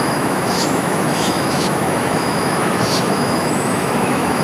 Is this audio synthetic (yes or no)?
yes